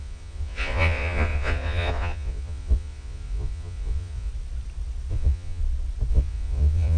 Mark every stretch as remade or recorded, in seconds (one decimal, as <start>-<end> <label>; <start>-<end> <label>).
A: 0.0-4.3 remade; 4.3-5.1 recorded; 5.1-5.6 remade; 5.6-6.1 recorded; 6.1-7.0 remade